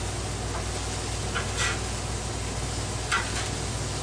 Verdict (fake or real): real